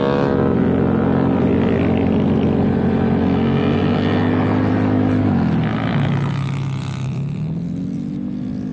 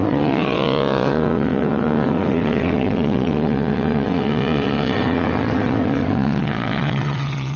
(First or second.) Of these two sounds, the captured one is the first